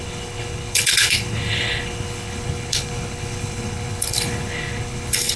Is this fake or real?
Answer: fake